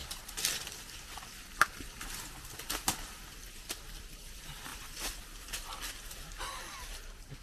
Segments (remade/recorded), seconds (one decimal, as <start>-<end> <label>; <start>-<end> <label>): 0.0-7.4 recorded